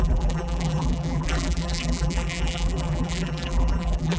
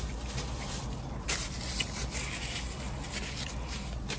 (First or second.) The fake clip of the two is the first